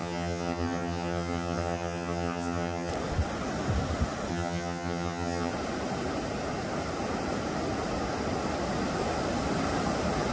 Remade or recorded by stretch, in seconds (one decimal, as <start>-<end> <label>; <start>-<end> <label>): 0.0-2.9 remade; 2.9-4.3 recorded; 4.3-5.5 remade; 5.5-10.3 recorded